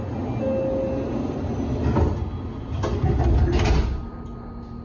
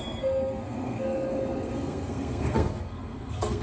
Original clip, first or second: first